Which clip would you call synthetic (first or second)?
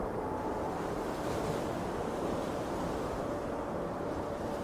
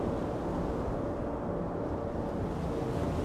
first